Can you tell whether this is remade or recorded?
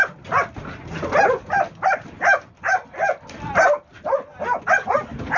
recorded